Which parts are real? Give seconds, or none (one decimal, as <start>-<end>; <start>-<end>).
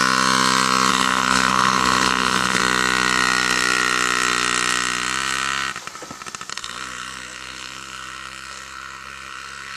0.0-0.9; 2.6-6.5